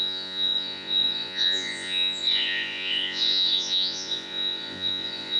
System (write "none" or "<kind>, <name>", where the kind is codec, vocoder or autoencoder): vocoder, Vocos